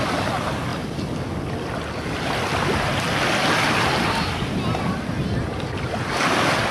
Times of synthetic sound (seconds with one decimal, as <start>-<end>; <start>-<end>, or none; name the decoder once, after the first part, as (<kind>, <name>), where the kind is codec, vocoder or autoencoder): none